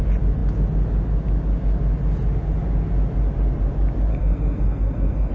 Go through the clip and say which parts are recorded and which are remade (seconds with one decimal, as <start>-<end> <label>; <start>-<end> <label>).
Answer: 0.0-4.1 recorded; 4.1-5.3 remade